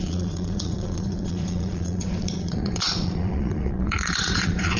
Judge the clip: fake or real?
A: fake